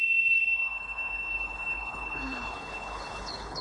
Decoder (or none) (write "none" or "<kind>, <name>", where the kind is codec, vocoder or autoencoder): codec, HILCodec